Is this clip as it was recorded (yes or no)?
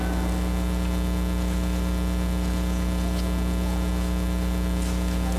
yes